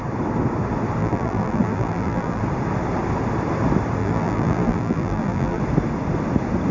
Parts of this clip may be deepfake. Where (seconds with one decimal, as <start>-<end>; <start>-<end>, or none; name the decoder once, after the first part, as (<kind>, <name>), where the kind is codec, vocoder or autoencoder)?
1.0-2.4 (vocoder, BigVGAN v2); 4.0-5.6